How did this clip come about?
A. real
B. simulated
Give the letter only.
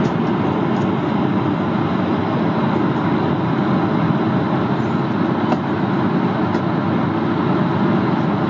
A